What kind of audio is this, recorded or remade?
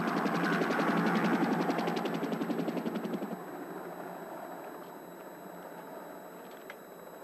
recorded